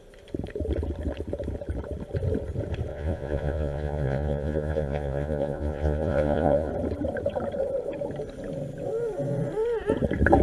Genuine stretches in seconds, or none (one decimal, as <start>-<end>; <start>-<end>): 0.0-2.9; 6.7-10.4